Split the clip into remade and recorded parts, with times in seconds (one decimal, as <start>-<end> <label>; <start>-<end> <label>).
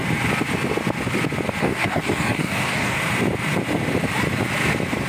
0.0-1.6 recorded; 1.6-3.0 remade; 3.0-5.1 recorded